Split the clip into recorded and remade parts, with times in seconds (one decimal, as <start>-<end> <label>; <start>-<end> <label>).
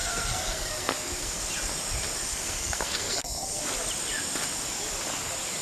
0.0-1.4 remade; 1.4-2.3 recorded; 2.3-3.6 remade; 3.6-5.6 recorded